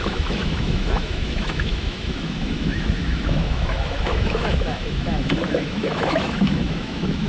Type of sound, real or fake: fake